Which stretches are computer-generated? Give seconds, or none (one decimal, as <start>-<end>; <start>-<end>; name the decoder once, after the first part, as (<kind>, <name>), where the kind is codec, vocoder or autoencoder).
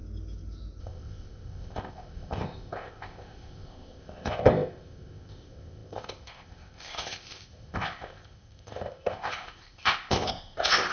0.8-10.9 (codec, ZipCodec)